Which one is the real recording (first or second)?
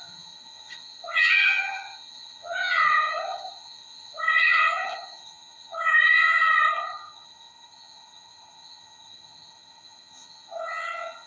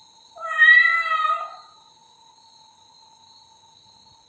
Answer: second